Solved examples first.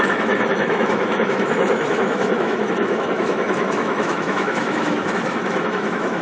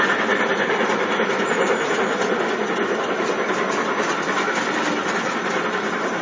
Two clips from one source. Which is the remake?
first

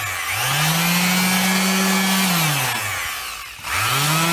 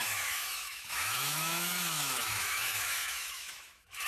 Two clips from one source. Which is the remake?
second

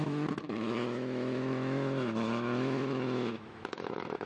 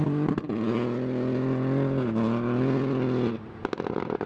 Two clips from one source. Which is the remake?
first